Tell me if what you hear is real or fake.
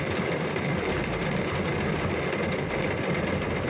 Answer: real